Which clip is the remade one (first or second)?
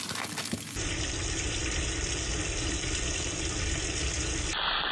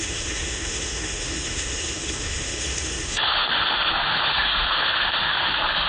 second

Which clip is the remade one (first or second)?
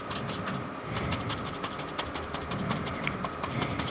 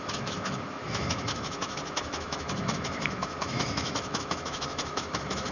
second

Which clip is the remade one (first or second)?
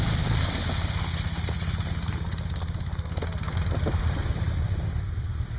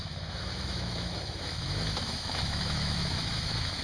second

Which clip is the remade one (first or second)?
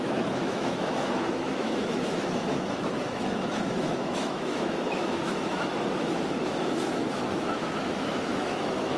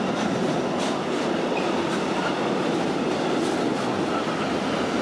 first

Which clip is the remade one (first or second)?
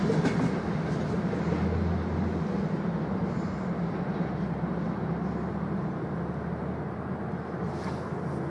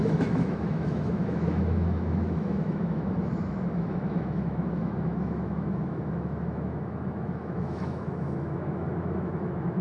second